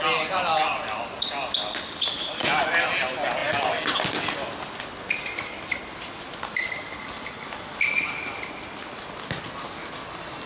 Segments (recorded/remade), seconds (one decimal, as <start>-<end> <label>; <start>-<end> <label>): 0.0-10.5 recorded